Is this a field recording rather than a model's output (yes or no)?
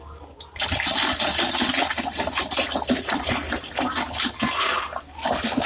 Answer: yes